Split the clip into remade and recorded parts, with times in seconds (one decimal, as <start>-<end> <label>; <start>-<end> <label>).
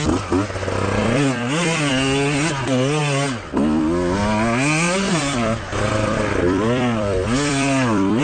0.0-1.0 recorded; 1.0-1.9 remade; 1.9-5.1 recorded; 5.1-8.2 remade